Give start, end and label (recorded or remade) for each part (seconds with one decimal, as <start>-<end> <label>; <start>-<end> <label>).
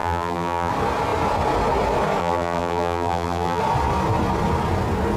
0.0-0.7 remade; 0.7-2.2 recorded; 2.2-3.6 remade; 3.6-5.2 recorded